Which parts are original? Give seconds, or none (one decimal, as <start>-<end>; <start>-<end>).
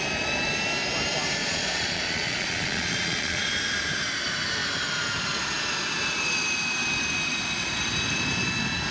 0.0-1.4; 3.5-8.9